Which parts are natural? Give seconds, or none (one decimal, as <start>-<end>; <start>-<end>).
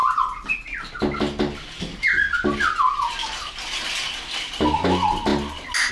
0.0-5.9